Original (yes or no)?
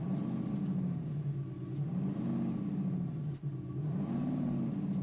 yes